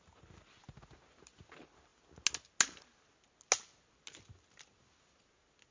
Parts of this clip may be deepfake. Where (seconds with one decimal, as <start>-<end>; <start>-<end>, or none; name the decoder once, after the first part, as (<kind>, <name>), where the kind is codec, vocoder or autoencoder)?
none